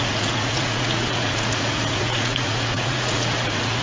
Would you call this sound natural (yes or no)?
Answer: no